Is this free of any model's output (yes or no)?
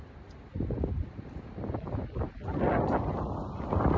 yes